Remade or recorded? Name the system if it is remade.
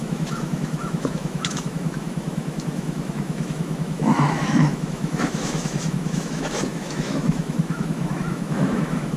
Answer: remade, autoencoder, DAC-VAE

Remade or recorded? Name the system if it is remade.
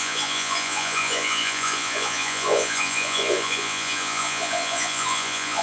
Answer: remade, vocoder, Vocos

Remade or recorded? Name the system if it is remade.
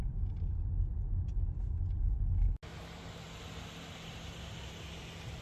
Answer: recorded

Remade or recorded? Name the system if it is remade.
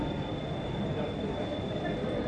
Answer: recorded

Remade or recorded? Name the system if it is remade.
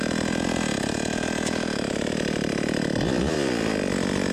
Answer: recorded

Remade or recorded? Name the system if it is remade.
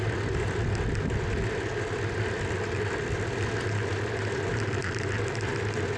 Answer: recorded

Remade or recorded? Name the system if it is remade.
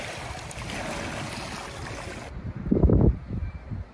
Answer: recorded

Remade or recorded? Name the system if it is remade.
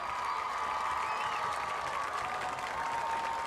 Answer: recorded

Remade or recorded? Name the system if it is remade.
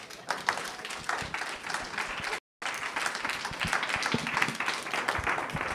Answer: recorded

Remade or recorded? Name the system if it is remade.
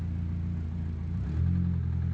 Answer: recorded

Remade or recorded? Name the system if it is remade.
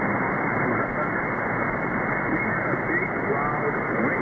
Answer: recorded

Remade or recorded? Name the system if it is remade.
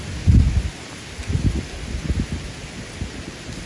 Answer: recorded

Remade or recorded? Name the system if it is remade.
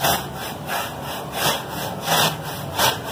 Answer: recorded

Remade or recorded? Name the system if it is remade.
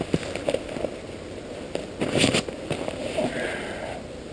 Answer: recorded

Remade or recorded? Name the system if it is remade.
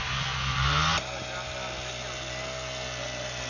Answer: recorded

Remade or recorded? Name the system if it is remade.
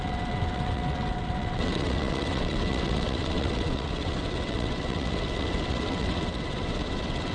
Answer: remade, vocoder, WaveNeXt